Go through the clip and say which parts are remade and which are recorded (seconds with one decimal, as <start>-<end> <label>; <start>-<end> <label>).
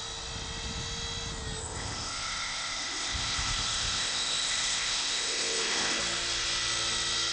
0.0-1.6 recorded; 1.6-6.0 remade; 6.0-7.3 recorded